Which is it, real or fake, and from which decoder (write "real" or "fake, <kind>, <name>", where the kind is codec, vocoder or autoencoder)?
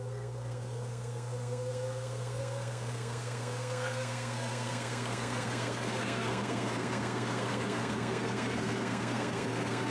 fake, codec, SNAC